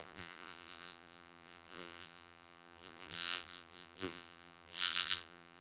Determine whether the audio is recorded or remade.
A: remade